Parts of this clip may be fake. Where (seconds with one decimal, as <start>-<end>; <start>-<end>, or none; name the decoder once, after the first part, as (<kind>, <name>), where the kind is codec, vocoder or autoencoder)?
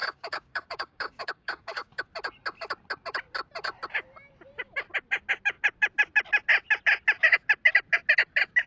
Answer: 0.0-2.0 (codec, DAC)